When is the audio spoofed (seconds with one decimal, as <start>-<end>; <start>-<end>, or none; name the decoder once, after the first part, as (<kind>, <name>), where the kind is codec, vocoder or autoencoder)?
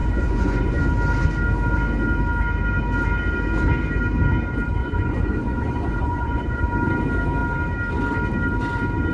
0.0-0.8 (vocoder, Vocos); 4.8-6.6